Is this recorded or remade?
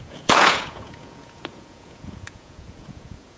remade